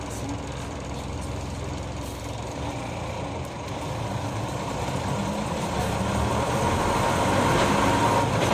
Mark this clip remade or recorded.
recorded